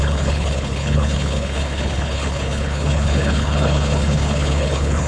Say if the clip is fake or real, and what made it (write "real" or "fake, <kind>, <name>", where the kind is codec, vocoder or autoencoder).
fake, codec, HILCodec